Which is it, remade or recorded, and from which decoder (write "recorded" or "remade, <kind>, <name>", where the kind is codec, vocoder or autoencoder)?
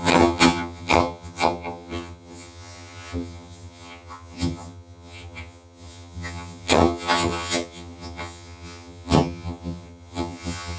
remade, vocoder, HiFi-GAN